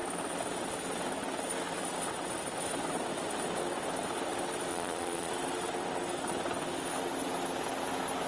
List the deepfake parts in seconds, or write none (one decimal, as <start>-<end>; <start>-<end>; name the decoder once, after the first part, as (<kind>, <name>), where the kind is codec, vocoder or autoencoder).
4.7-5.3 (vocoder, Vocos)